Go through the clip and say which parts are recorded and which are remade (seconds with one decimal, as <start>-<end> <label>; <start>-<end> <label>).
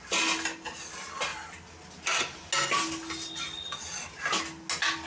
0.0-5.1 recorded